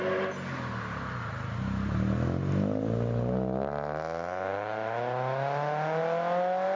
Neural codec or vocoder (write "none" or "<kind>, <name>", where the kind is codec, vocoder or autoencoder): none